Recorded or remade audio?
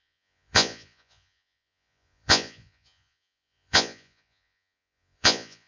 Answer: remade